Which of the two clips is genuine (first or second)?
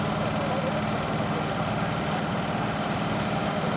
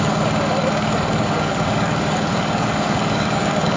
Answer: first